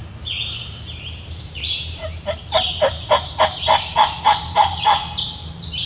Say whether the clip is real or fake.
fake